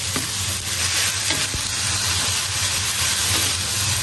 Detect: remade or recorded recorded